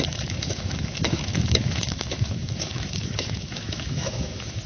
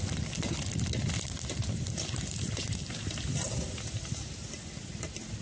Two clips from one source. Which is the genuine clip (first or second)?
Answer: second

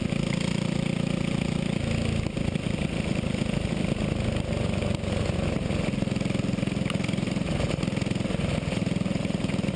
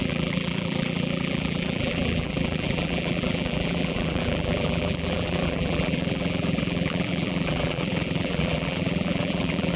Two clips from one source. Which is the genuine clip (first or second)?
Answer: first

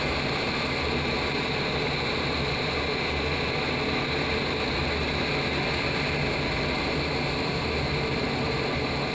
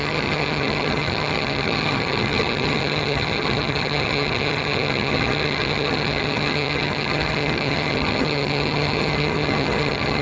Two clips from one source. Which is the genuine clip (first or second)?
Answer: first